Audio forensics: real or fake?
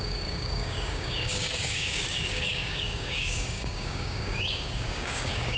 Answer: fake